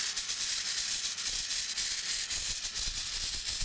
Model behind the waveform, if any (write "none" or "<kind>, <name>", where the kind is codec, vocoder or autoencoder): none